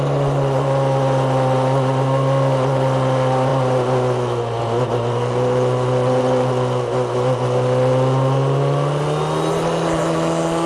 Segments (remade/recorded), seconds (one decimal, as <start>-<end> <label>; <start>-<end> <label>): 0.0-10.7 recorded